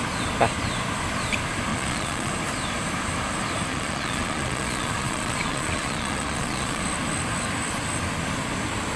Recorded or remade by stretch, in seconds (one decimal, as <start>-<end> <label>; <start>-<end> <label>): 0.0-1.7 recorded; 1.7-2.3 remade; 2.3-3.7 recorded; 3.7-6.8 remade; 6.8-9.0 recorded